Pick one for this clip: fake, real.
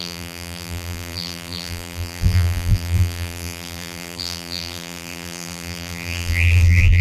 fake